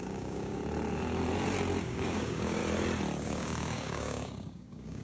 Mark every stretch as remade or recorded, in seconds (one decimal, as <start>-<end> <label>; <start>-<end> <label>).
0.0-0.6 remade; 0.6-1.8 recorded; 1.8-2.6 remade; 2.6-3.2 recorded; 3.2-5.0 remade

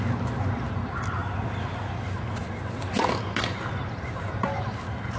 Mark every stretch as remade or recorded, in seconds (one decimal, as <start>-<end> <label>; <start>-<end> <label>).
0.0-5.2 recorded

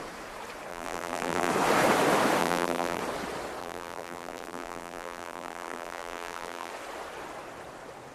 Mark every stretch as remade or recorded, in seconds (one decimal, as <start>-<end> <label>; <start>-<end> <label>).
0.0-0.7 recorded; 0.7-1.5 remade; 1.5-2.4 recorded; 2.4-3.0 remade; 3.0-3.6 recorded; 3.6-6.7 remade; 6.7-8.1 recorded

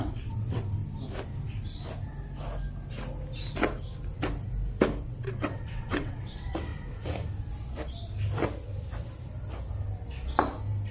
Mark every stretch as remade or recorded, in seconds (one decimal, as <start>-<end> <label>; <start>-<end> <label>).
0.0-0.6 remade; 0.6-5.0 recorded; 5.0-6.7 remade; 6.7-10.9 recorded

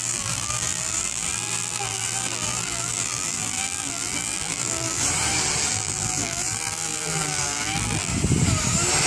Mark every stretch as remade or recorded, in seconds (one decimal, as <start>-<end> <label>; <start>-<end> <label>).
0.0-5.0 remade; 5.0-5.7 recorded; 5.7-8.1 remade; 8.1-9.1 recorded